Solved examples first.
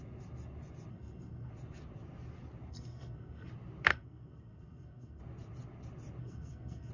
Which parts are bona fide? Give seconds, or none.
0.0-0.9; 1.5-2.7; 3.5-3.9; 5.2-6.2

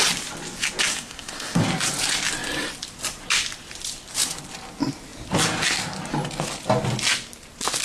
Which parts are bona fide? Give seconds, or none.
0.0-0.9; 1.6-7.8

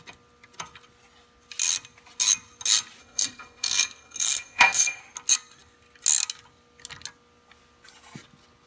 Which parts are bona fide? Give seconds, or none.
0.0-3.0; 5.0-8.7

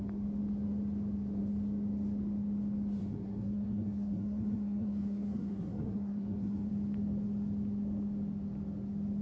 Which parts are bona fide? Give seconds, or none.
0.0-3.0; 6.7-9.2

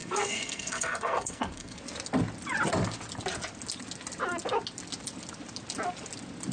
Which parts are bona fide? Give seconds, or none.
1.8-6.5

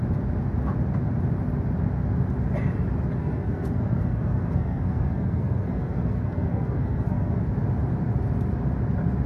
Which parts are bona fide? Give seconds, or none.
0.0-3.2; 7.4-9.3